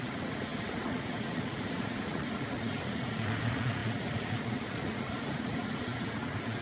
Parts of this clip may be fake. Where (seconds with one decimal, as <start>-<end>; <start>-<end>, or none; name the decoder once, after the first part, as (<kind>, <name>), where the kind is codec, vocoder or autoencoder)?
0.0-6.6 (vocoder, Vocos)